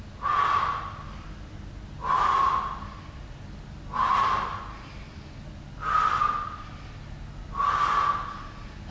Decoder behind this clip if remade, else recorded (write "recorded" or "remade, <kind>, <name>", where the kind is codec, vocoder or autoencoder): recorded